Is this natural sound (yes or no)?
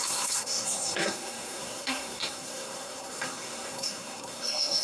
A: no